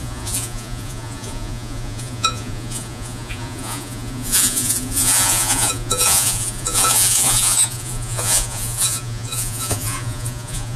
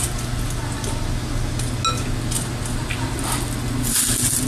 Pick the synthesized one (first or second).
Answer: first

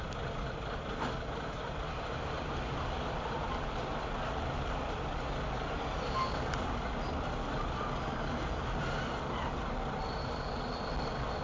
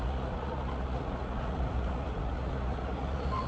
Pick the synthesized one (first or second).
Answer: second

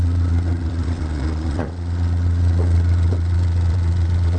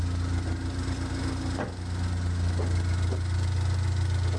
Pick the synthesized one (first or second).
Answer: first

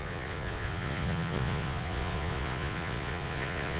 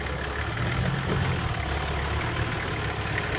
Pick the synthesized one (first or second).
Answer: first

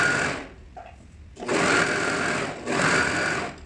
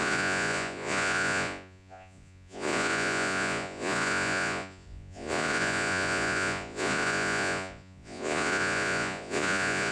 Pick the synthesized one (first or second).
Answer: second